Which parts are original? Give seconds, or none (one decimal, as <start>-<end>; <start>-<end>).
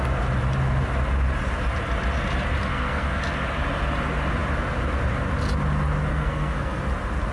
0.0-2.7; 3.2-6.1; 6.8-7.3